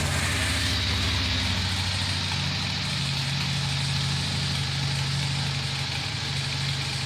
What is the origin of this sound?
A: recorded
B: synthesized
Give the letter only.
A